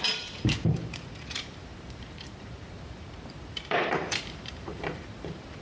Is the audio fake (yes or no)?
yes